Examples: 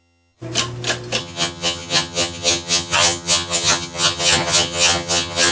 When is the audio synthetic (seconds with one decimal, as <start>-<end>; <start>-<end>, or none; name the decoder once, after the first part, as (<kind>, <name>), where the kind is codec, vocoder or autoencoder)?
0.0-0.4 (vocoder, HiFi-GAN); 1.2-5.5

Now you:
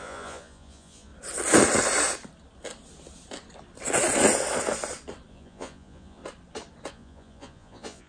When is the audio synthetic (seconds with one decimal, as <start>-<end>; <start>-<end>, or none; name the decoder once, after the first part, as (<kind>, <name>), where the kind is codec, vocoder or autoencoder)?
0.0-1.1 (vocoder, Vocos); 5.3-6.2; 6.9-8.1

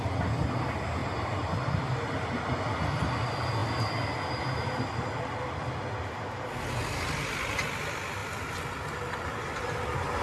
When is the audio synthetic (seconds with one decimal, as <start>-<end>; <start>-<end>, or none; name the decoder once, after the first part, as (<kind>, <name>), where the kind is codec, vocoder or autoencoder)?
1.0-2.5 (vocoder, BigVGAN v2)

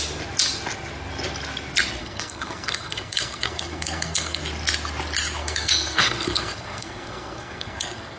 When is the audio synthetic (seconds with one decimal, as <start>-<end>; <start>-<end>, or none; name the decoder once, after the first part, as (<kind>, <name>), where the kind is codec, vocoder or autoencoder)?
2.0-4.4 (codec, SNAC); 5.4-8.2